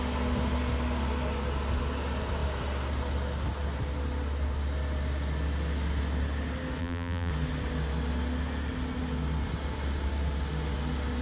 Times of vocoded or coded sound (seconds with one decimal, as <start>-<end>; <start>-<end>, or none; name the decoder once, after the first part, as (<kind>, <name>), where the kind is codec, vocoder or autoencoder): 6.8-7.3 (vocoder, BigVGAN v2)